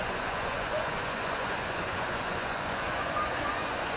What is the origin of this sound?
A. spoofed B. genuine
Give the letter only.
A